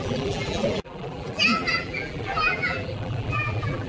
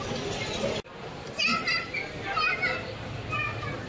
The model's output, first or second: first